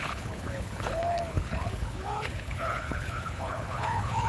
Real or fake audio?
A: fake